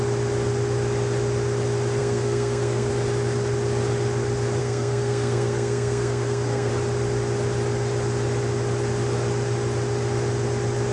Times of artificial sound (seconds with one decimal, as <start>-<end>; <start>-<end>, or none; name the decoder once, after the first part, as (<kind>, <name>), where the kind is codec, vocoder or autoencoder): 2.0-2.9 (codec, SNAC); 4.6-6.7